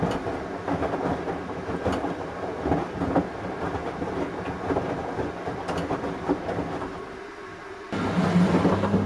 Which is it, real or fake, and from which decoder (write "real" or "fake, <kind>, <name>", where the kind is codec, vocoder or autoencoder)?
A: real